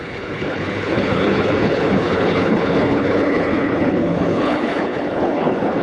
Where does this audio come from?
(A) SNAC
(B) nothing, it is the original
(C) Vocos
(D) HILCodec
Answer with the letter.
D